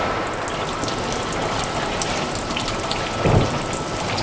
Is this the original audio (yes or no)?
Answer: yes